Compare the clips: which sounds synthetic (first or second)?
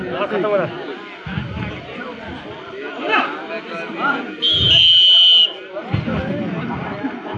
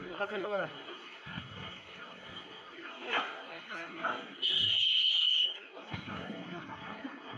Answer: second